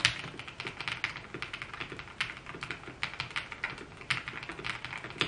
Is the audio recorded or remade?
recorded